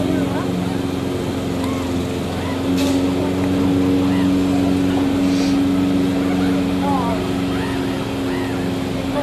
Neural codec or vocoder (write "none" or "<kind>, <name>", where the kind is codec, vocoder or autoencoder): none